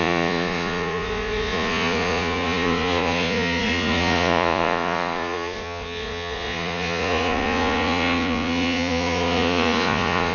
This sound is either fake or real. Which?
fake